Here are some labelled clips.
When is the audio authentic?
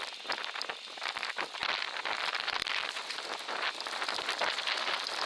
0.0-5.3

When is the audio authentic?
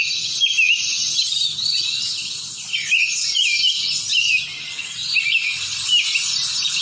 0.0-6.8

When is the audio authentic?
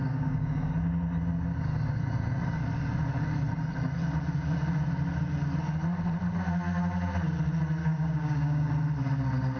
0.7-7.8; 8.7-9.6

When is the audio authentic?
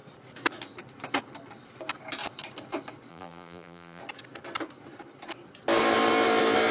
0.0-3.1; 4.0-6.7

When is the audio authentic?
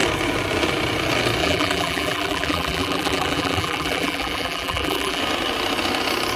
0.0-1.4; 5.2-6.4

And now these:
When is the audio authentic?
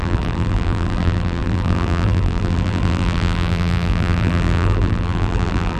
none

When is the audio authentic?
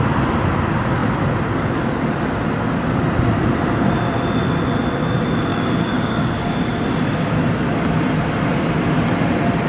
0.0-5.5; 6.6-9.7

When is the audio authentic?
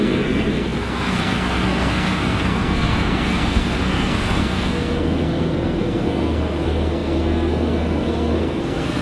none